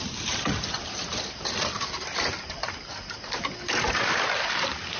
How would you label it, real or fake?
real